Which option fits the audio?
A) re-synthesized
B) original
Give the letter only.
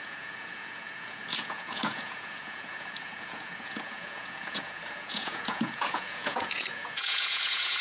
A